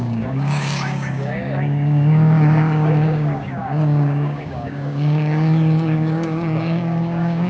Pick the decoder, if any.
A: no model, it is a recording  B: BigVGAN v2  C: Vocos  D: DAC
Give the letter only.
D